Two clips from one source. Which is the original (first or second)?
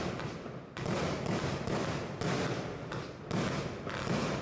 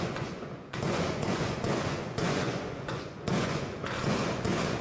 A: first